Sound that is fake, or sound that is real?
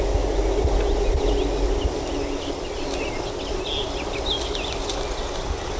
real